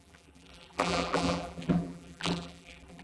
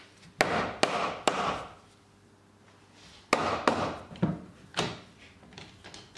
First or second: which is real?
second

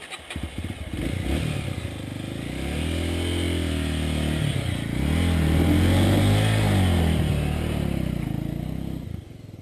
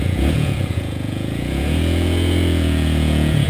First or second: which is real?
first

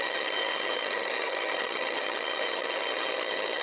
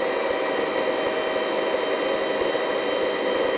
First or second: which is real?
second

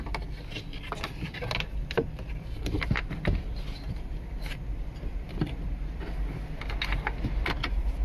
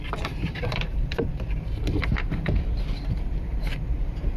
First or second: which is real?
first